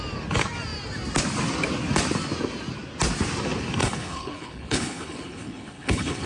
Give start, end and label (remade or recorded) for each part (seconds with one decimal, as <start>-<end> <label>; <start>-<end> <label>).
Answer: 0.0-3.8 recorded; 3.8-6.3 remade